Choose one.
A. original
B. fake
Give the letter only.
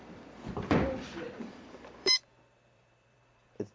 B